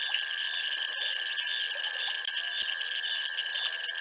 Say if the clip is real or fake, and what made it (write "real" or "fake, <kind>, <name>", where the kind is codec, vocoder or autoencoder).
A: real